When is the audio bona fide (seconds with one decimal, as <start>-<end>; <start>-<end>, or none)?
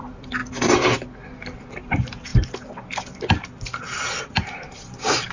0.4-1.9